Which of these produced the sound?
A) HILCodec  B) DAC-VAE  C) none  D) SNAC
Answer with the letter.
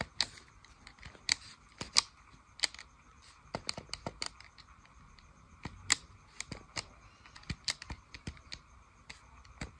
C